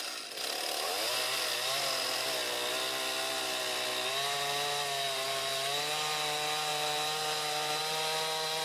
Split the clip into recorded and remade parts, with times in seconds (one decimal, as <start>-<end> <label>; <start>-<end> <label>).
0.0-8.6 recorded